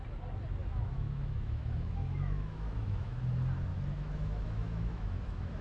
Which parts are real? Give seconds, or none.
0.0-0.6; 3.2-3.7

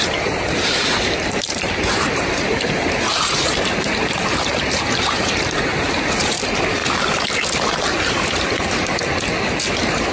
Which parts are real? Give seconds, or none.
6.8-8.1; 8.9-9.5

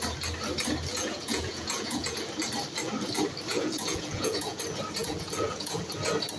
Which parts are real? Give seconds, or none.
0.0-0.9; 2.2-3.5; 4.6-5.0; 5.8-6.4

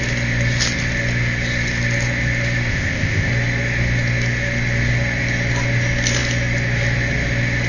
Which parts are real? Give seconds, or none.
0.0-2.7; 3.3-7.7